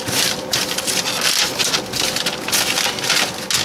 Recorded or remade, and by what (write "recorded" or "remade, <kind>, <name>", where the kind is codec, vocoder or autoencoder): recorded